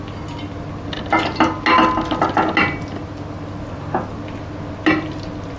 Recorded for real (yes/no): yes